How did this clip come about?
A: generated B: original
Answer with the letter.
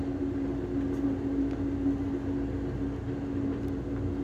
B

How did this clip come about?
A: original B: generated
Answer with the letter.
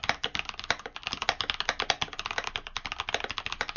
A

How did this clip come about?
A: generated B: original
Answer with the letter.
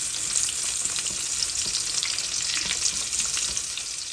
B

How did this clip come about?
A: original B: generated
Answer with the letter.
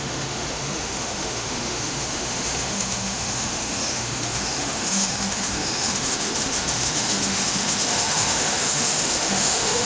B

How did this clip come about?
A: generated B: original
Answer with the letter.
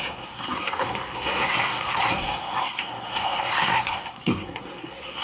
A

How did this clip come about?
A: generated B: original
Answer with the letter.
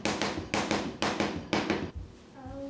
B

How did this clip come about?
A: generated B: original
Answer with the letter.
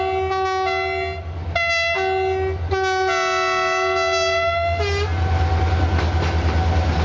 B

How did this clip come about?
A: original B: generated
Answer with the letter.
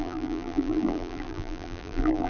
B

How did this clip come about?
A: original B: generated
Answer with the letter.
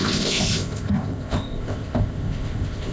B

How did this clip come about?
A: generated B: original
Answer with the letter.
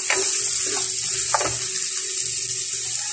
B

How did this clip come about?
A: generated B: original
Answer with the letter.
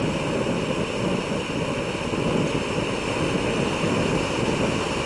B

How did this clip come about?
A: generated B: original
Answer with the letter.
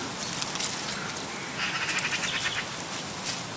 B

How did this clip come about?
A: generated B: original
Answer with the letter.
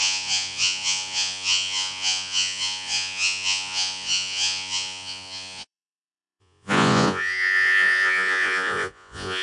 A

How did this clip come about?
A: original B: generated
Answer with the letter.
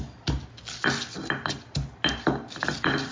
A